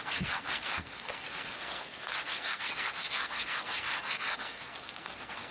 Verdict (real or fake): fake